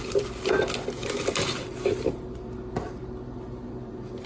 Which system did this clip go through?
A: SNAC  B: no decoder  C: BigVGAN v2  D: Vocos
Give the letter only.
B